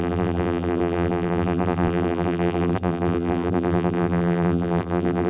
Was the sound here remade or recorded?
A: remade